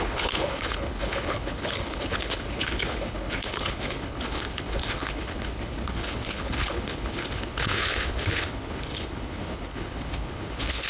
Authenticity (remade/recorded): remade